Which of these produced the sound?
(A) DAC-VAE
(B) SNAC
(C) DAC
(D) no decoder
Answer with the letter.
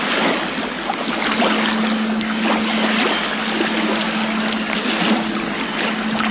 D